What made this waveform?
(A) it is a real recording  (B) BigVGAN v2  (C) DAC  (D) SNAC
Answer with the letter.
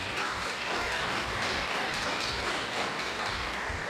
C